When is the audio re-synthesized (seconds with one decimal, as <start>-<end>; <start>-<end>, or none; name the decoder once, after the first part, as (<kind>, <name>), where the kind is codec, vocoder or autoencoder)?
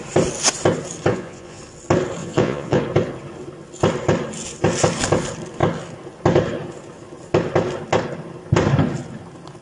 1.1-1.6 (vocoder, Vocos); 2.2-2.8